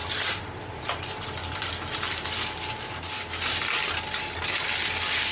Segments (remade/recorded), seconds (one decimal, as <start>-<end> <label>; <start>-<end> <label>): 0.0-5.3 recorded